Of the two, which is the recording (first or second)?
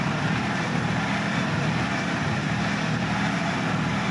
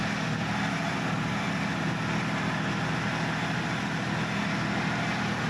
second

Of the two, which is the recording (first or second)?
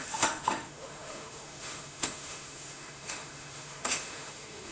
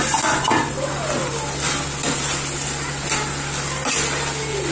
second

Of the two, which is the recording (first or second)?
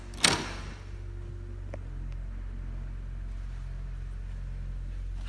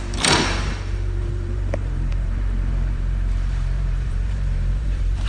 first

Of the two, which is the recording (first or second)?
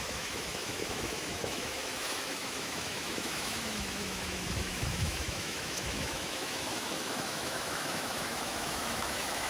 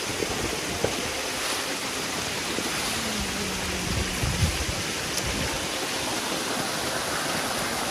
second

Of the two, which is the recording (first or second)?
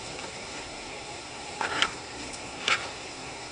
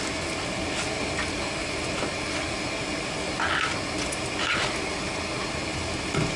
second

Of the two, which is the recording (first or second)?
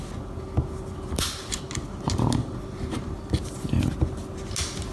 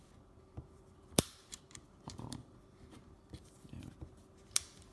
first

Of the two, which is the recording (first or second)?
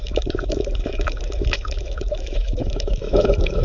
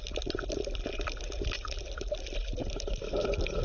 second